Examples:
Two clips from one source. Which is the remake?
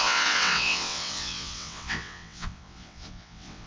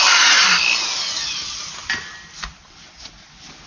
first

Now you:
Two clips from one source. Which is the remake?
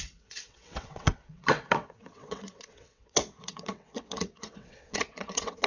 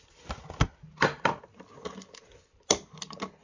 first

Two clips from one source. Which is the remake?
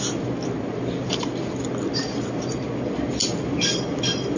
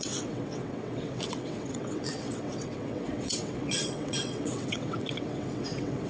second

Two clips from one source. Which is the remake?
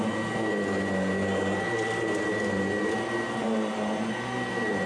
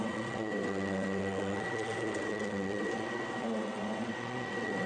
second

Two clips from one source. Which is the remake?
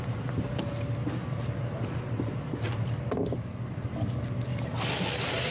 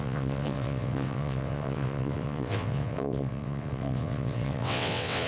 second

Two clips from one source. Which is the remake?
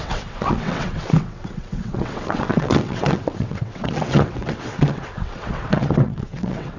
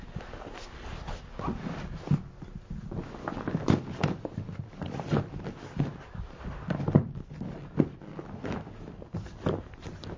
first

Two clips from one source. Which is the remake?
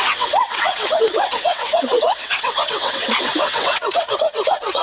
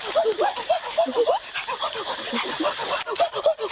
first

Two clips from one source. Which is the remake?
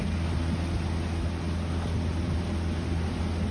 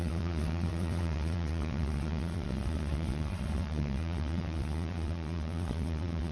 second